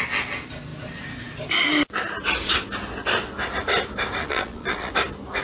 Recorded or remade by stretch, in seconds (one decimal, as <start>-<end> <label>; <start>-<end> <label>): 0.0-4.2 recorded; 4.2-4.9 remade; 4.9-5.4 recorded